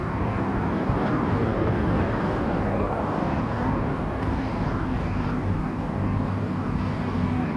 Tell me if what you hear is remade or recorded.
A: remade